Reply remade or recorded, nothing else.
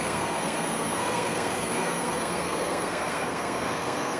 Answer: remade